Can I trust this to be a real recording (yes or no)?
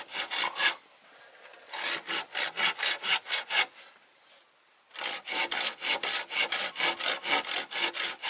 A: yes